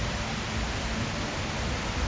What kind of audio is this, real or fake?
real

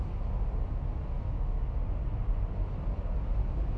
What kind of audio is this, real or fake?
real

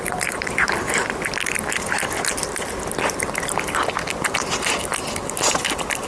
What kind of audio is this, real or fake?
real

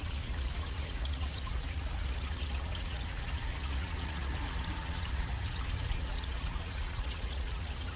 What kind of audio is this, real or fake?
fake